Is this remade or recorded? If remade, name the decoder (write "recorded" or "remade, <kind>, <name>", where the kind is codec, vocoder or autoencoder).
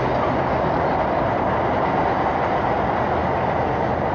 recorded